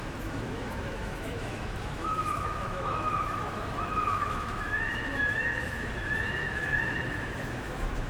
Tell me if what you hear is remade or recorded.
remade